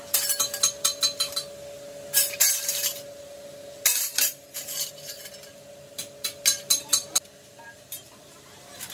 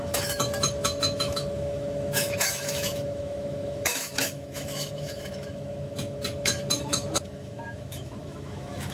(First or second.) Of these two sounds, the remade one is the second